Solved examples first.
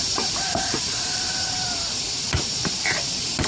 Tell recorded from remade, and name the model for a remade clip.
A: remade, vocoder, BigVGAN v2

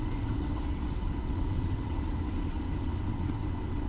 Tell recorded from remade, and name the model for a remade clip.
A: remade, vocoder, WaveNeXt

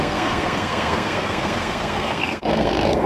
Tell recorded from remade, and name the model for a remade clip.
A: remade, codec, SNAC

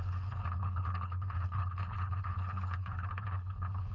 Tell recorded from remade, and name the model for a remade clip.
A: remade, codec, HILCodec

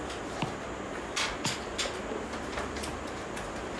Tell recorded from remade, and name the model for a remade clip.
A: recorded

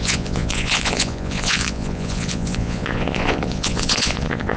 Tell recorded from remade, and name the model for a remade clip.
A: remade, vocoder, Vocos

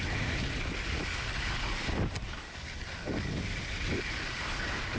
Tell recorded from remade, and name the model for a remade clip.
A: recorded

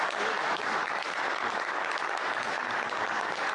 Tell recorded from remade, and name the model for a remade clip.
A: remade, codec, DAC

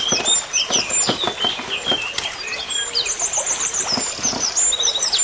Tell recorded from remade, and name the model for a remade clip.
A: recorded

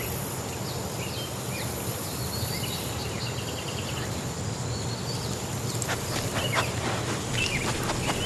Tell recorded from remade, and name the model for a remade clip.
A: recorded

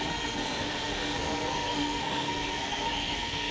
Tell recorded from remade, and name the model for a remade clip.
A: remade, codec, SNAC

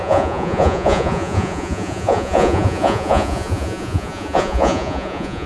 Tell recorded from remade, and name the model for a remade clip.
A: remade, vocoder, Vocos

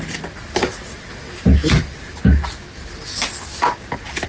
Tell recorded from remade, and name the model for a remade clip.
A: recorded